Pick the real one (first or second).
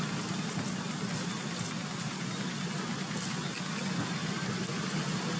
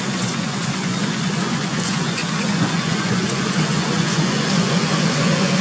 first